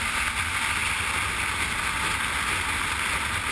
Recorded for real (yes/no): yes